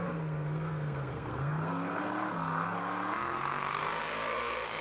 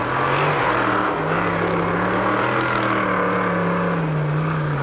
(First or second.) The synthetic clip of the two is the first